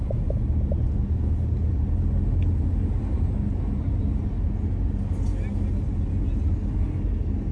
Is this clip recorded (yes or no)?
yes